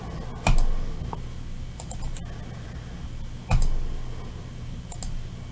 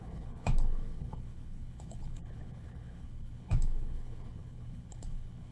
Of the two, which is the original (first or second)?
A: first